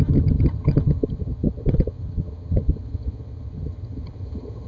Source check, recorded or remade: remade